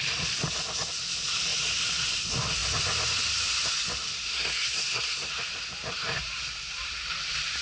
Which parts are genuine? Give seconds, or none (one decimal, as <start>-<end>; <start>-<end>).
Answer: 0.0-4.3; 5.3-7.6

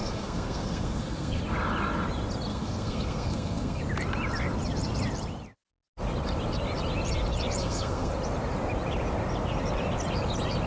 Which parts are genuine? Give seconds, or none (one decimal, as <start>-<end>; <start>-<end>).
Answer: 1.4-2.5; 3.8-7.6; 8.1-10.7